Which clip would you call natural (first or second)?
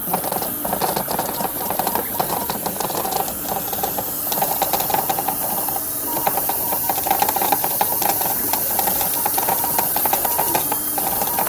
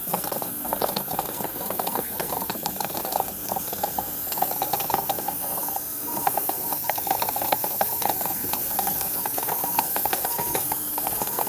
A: first